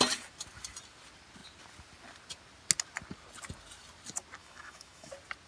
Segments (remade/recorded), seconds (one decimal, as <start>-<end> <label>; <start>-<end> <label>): 0.0-4.4 recorded; 4.4-5.1 remade; 5.1-5.5 recorded